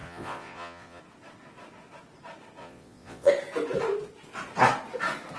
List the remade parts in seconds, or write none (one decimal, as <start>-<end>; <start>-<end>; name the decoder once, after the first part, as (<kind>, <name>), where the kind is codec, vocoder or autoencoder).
0.0-1.0 (vocoder, Vocos); 2.6-3.3